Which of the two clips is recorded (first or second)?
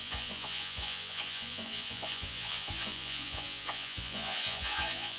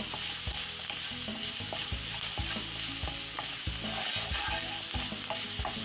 second